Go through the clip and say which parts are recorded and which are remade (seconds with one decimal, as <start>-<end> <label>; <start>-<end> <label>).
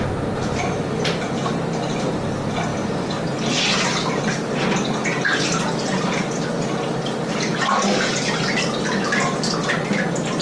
0.0-10.4 recorded